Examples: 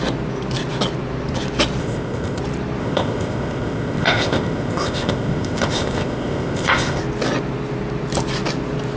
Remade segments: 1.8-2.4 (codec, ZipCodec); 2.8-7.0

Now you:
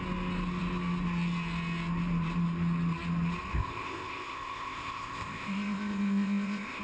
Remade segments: 3.5-6.8 (codec, ZipCodec)